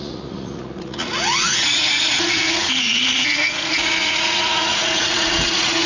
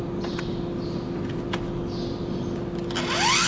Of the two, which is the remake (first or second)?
first